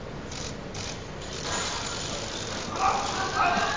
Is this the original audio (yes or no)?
yes